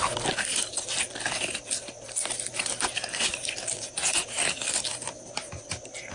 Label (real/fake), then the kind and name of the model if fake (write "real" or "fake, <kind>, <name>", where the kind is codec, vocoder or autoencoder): real